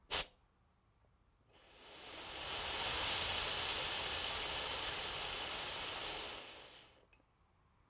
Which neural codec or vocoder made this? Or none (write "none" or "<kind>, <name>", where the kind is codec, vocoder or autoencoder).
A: none